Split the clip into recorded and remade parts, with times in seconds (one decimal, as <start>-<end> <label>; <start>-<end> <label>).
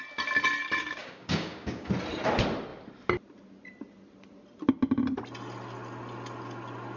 0.0-1.0 recorded; 1.0-1.9 remade; 1.9-7.0 recorded